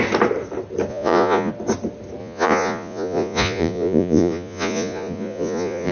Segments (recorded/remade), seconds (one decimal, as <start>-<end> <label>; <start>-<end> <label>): 0.0-0.9 recorded; 0.9-1.5 remade; 1.5-2.2 recorded; 2.2-5.9 remade